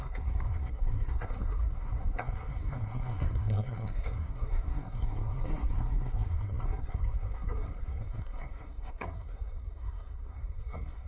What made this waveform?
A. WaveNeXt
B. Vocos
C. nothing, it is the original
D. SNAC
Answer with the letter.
D